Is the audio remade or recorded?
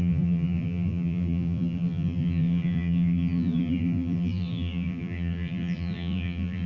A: remade